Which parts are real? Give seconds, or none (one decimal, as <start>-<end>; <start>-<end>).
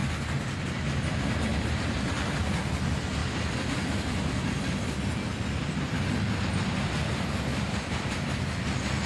0.0-1.5; 2.1-7.5; 8.6-9.1